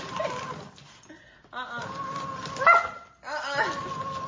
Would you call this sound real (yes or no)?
yes